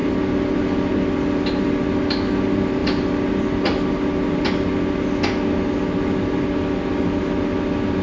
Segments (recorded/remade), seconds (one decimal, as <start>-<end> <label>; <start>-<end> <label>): 0.0-8.0 recorded